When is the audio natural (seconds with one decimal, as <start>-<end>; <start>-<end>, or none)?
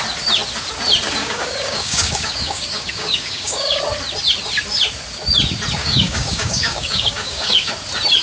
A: 0.0-1.2; 3.8-5.8; 7.7-8.2